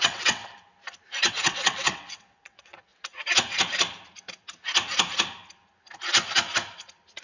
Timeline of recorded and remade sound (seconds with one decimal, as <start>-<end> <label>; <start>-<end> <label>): 0.0-0.4 remade; 0.4-1.3 recorded; 1.3-2.9 remade; 2.9-7.2 recorded